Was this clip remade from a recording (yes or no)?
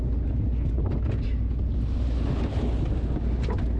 no